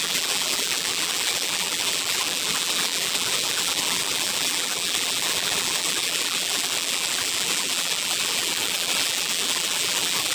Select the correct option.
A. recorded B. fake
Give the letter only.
B